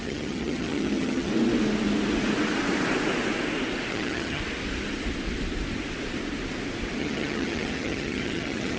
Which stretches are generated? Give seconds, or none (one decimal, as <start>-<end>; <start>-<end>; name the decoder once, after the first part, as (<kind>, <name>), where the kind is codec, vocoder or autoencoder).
0.0-1.3 (vocoder, HiFi-GAN); 3.9-4.4; 7.0-8.8

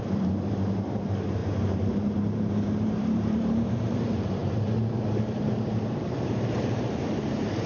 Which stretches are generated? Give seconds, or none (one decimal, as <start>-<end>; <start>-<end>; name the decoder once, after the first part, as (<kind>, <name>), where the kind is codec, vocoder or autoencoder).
0.0-7.7 (vocoder, BigVGAN v2)

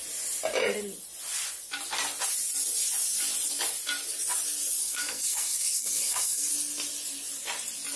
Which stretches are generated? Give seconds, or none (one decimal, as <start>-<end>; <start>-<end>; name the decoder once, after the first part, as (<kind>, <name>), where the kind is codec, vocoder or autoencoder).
4.8-6.5 (codec, SNAC)

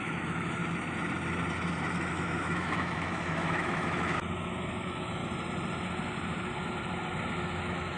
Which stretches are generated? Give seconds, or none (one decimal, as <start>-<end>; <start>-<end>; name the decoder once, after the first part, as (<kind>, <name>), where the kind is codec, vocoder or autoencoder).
0.0-0.6 (autoencoder, DAC-VAE); 2.1-5.2; 7.6-8.0